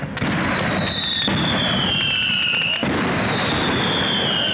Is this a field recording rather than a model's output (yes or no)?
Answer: yes